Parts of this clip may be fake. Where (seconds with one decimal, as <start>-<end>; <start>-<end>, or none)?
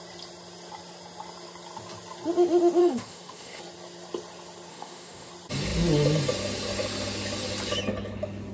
2.8-3.6; 4.7-5.3